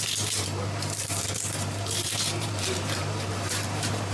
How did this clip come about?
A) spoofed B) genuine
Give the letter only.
A